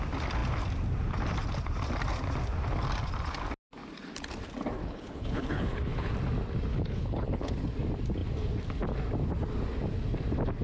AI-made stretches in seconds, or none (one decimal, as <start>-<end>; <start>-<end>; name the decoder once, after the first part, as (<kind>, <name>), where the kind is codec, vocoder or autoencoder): 4.8-6.1 (codec, HILCodec); 6.7-7.5